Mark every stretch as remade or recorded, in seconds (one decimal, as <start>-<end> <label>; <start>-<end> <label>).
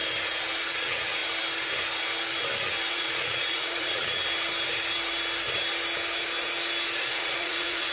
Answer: 0.0-0.6 recorded; 0.6-1.2 remade; 1.2-2.9 recorded; 2.9-4.2 remade; 4.2-7.0 recorded; 7.0-7.9 remade